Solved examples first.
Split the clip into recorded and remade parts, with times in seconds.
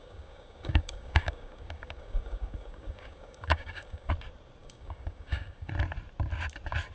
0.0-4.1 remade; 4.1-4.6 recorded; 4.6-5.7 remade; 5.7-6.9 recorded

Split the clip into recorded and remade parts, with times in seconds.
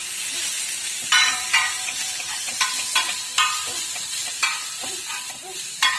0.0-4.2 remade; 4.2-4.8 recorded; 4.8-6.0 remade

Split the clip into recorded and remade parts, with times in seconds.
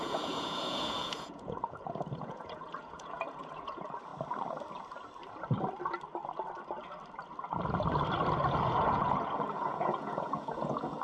0.0-4.1 remade; 4.1-8.6 recorded; 8.6-11.0 remade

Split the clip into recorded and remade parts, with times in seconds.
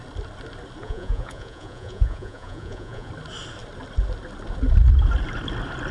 0.0-0.8 recorded; 0.8-3.1 remade; 3.1-5.9 recorded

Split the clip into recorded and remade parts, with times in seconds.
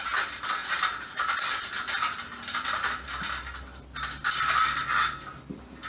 0.0-5.9 recorded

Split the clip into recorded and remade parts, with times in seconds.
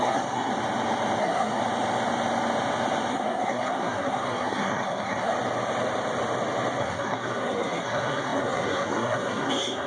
0.0-0.5 remade; 0.5-1.2 recorded; 1.2-1.6 remade; 1.6-3.1 recorded; 3.1-5.3 remade; 5.3-6.8 recorded; 6.8-9.9 remade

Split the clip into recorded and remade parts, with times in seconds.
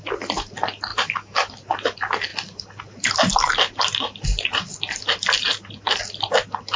0.0-0.9 recorded; 0.9-1.5 remade; 1.5-6.8 recorded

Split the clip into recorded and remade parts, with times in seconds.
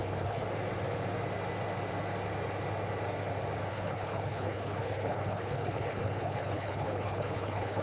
0.0-0.4 remade; 0.4-3.7 recorded; 3.7-7.8 remade